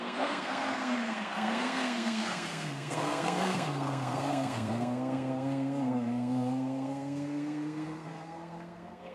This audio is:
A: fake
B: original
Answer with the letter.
A